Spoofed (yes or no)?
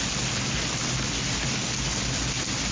no